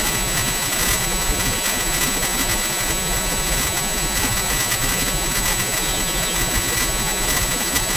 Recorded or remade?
remade